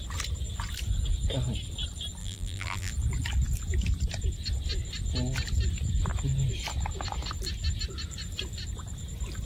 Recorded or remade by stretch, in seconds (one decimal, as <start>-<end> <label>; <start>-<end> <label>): 0.0-2.2 recorded; 2.2-2.9 remade; 2.9-9.4 recorded